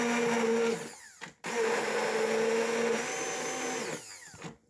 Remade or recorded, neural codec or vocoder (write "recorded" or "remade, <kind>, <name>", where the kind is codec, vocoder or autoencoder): recorded